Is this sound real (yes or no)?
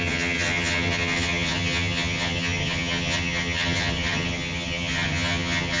no